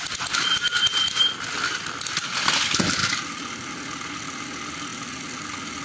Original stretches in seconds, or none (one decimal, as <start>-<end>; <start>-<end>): 0.0-3.0; 3.7-5.8